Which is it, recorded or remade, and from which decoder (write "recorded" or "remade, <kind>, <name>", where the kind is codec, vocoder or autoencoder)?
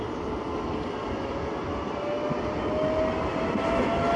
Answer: recorded